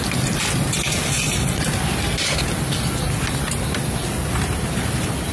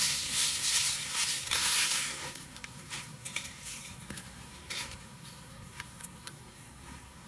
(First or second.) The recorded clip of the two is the first